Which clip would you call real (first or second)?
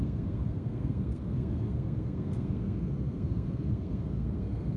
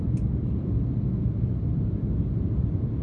second